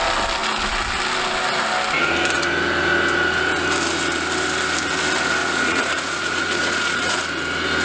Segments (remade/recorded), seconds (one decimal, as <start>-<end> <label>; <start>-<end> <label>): 0.0-5.4 recorded; 5.4-7.2 remade; 7.2-7.8 recorded